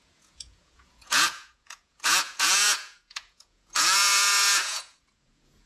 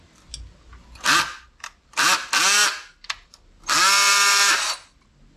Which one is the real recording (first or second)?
second